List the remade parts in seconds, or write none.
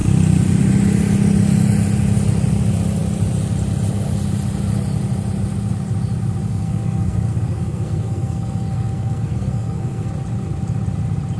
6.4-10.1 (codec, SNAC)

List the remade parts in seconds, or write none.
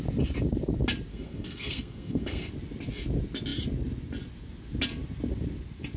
1.1-2.5 (codec, SNAC)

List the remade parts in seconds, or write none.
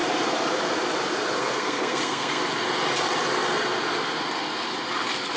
1.4-2.4 (codec, SNAC)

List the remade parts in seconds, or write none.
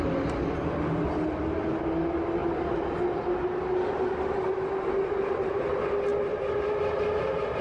none